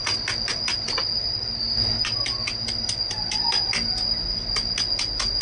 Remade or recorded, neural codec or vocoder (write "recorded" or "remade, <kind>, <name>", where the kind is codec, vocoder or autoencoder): recorded